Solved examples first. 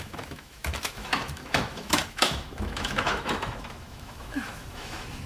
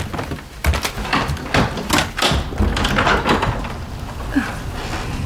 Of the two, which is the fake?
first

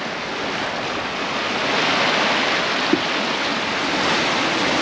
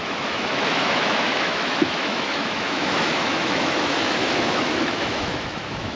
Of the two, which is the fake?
second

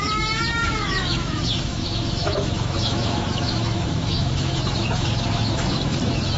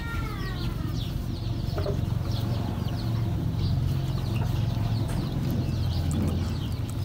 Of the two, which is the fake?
first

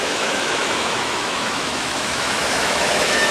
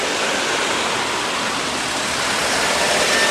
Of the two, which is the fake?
first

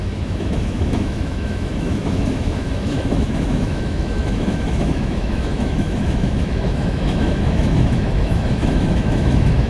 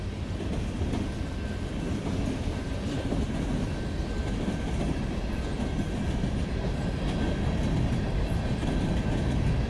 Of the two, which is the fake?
first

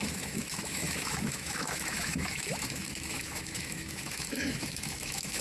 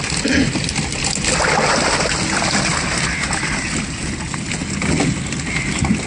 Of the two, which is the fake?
first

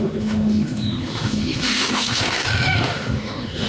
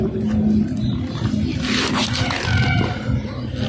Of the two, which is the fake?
first